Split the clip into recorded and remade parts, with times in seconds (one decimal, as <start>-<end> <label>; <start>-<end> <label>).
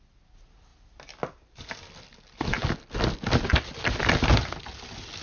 0.0-5.2 recorded